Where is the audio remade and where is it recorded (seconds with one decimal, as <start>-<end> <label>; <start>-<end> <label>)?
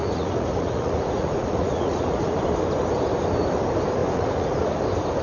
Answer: 0.0-2.4 remade; 2.4-4.0 recorded; 4.0-4.8 remade; 4.8-5.2 recorded